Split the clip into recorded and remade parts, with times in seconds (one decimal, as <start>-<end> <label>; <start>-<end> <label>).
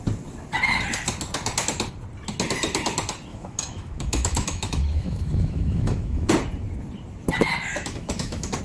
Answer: 0.0-3.3 recorded; 3.3-6.3 remade; 6.3-7.7 recorded; 7.7-8.6 remade